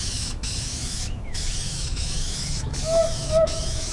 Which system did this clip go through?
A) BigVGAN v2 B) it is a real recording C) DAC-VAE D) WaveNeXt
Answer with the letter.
C